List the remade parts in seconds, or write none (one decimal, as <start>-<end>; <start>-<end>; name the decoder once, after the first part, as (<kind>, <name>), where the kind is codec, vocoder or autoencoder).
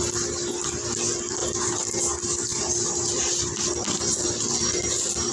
1.4-2.0 (vocoder, BigVGAN v2)